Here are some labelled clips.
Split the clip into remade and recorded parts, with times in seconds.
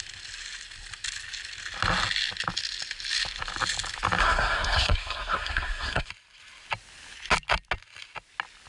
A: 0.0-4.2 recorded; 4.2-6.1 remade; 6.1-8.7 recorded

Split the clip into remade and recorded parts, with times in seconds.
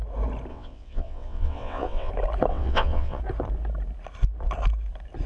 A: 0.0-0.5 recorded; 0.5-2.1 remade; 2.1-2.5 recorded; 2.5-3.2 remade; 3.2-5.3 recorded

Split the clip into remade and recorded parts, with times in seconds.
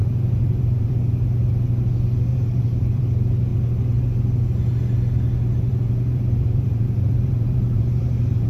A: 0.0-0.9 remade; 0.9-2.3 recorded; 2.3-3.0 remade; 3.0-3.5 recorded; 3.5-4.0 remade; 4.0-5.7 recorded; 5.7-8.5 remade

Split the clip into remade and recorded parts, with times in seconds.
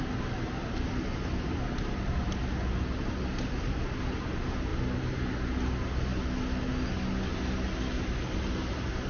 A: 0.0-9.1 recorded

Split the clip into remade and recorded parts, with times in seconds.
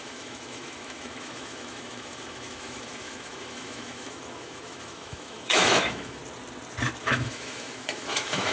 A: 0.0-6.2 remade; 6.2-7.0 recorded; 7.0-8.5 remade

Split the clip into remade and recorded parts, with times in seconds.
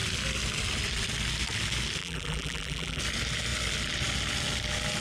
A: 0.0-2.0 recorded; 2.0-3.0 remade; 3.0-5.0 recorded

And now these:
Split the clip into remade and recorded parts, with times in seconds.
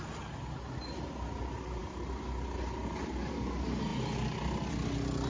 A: 0.0-5.3 recorded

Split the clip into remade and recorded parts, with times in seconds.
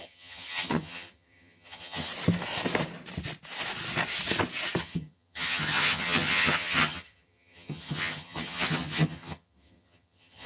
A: 0.0-2.1 remade; 2.1-4.8 recorded; 4.8-10.5 remade